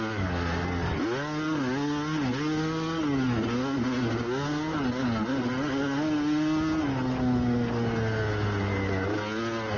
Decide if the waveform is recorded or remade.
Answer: recorded